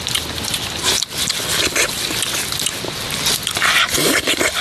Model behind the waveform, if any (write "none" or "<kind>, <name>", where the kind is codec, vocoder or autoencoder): none